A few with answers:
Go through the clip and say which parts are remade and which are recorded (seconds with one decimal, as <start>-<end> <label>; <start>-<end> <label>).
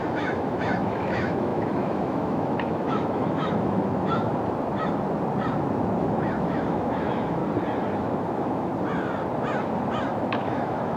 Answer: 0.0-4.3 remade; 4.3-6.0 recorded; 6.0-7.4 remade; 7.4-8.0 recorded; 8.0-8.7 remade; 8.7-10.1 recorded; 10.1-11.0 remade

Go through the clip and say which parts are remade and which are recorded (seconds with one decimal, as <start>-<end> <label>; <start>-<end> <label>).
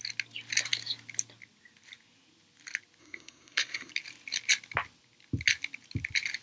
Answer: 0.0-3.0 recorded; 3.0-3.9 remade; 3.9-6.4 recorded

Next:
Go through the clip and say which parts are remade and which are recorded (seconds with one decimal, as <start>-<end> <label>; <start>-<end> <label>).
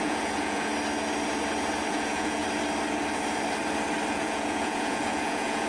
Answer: 0.0-0.7 remade; 0.7-1.9 recorded; 1.9-2.4 remade; 2.4-4.1 recorded; 4.1-5.7 remade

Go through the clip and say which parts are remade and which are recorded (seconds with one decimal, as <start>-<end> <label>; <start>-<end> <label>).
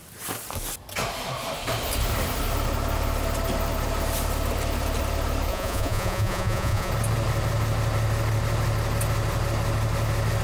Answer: 0.0-5.5 recorded; 5.5-6.9 remade; 6.9-10.4 recorded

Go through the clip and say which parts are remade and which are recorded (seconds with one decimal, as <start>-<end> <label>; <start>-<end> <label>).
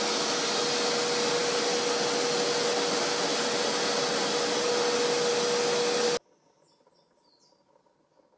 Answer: 0.0-8.4 recorded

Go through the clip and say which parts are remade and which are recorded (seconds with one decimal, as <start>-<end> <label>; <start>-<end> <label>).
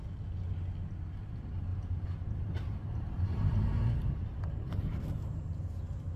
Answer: 0.0-1.7 recorded; 1.7-4.2 remade; 4.2-6.2 recorded